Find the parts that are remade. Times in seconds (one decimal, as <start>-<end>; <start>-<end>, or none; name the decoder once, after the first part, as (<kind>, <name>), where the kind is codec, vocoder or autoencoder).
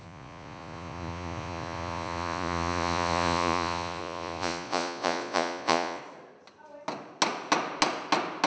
0.0-6.0 (vocoder, Vocos)